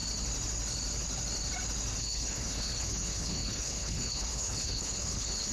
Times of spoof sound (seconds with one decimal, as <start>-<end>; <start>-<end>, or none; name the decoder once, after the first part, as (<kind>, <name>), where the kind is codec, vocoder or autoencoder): 2.0-5.5 (codec, HILCodec)